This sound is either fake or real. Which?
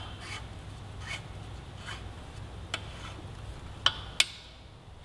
real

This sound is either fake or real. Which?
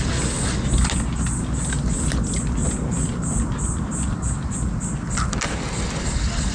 real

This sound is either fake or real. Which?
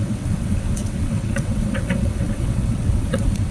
fake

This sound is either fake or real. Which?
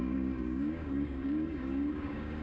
fake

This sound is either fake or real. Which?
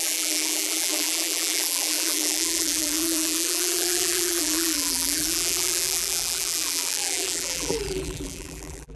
fake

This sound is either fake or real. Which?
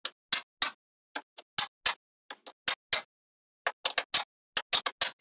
real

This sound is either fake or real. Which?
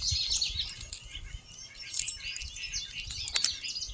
real